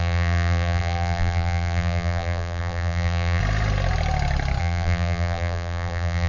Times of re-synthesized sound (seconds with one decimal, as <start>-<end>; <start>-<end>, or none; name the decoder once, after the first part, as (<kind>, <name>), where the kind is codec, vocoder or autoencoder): 0.0-3.4 (vocoder, BigVGAN v2); 4.6-6.3